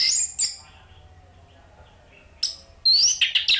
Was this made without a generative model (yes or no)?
yes